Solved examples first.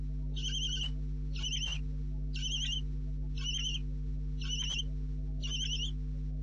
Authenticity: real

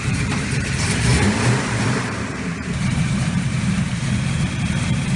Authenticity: fake